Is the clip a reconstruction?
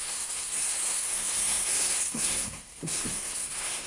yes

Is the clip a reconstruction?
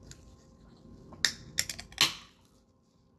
no